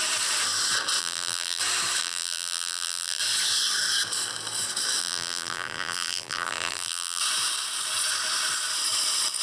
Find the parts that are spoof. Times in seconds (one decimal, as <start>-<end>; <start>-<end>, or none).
1.0-1.6; 2.0-3.2; 5.0-7.2